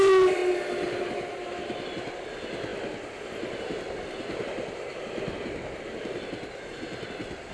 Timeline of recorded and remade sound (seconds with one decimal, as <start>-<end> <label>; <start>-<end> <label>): 0.0-7.5 recorded